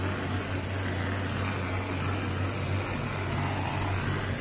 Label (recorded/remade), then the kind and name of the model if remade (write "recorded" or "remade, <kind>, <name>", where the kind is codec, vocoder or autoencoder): recorded